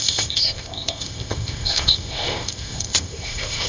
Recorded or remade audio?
remade